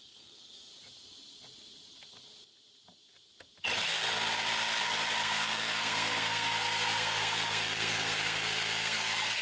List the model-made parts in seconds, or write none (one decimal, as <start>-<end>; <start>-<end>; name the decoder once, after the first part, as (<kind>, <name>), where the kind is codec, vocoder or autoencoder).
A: 0.0-0.7 (codec, SNAC); 5.2-9.4